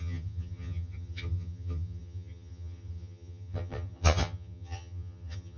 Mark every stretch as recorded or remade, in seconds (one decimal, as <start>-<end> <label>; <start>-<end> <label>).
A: 0.0-5.6 remade